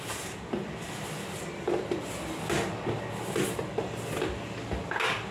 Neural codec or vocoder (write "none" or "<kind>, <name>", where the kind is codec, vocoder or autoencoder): none